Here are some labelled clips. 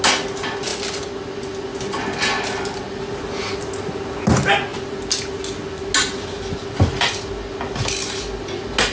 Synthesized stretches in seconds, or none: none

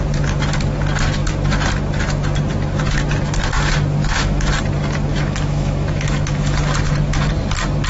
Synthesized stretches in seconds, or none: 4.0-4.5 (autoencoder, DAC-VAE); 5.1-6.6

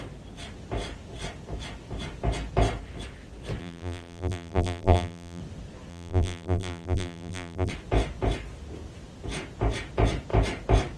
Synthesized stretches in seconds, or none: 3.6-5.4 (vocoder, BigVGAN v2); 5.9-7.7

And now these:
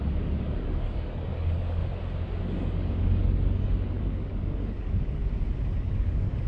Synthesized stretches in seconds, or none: 0.0-1.8 (codec, DAC); 2.4-5.2; 5.8-6.5

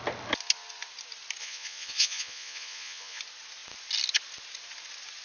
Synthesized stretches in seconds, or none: 1.4-3.2 (vocoder, Vocos)

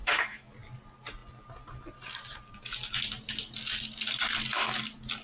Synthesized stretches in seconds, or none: 0.0-0.5 (autoencoder, DAC-VAE)

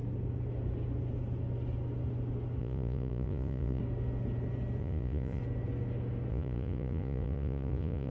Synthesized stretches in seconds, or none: 2.6-3.8 (vocoder, Vocos); 4.8-5.4; 6.3-8.1